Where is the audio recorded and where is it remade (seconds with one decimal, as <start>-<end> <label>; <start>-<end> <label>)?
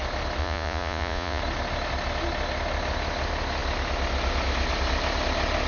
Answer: 0.0-0.4 recorded; 0.4-1.4 remade; 1.4-5.7 recorded